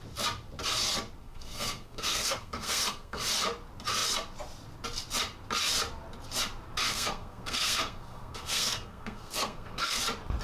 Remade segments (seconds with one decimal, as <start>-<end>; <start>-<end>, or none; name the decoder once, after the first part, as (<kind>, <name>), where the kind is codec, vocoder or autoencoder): 1.2-3.2 (codec, SNAC); 6.9-10.0